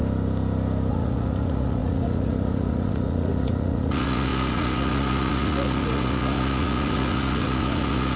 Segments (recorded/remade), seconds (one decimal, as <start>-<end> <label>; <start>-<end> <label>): 0.0-0.9 recorded; 0.9-8.2 remade